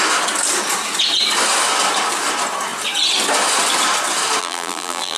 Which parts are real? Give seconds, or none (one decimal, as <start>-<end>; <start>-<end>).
0.0-4.4